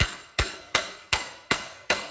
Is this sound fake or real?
fake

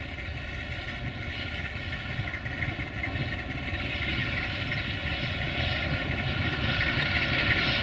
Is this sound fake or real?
real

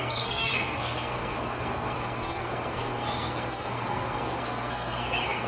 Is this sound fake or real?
fake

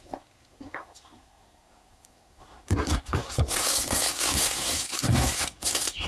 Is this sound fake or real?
fake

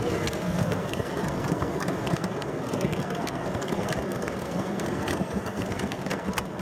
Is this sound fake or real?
fake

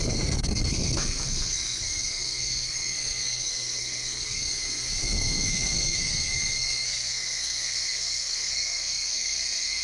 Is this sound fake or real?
fake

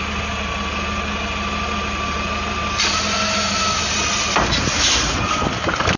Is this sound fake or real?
real